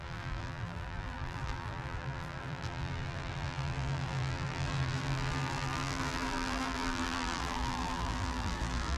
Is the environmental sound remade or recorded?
remade